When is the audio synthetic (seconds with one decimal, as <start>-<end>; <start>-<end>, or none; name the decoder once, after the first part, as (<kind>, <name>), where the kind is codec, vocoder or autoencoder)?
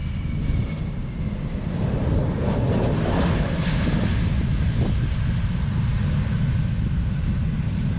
none